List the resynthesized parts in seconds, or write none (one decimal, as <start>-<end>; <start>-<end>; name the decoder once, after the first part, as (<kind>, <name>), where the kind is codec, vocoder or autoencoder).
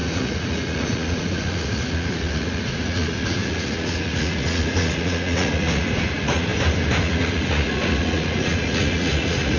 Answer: 0.0-6.5 (vocoder, Vocos); 7.0-9.6